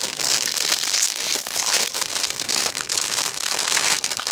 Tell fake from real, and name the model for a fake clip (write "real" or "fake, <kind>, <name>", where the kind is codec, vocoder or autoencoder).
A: fake, codec, SNAC